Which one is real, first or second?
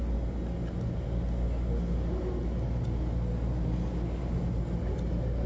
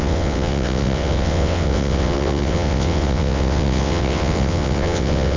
first